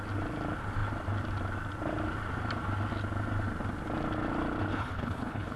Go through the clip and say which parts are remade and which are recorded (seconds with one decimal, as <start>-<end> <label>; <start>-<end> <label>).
0.0-4.7 recorded; 4.7-5.6 remade